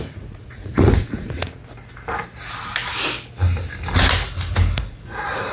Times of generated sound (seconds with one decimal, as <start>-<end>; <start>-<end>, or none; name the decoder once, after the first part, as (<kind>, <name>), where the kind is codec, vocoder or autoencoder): 0.0-1.6 (vocoder, Vocos); 4.9-5.5